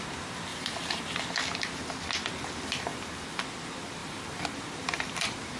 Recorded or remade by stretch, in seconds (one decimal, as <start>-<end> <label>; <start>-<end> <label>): 0.0-0.5 recorded; 0.5-1.2 remade; 1.2-2.9 recorded; 2.9-3.4 remade; 3.4-4.0 recorded; 4.0-4.6 remade; 4.6-5.6 recorded